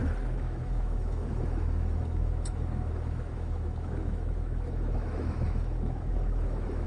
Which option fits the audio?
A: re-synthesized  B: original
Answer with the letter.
A